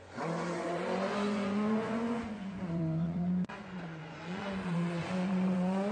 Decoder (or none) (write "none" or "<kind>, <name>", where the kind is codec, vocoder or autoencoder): vocoder, Vocos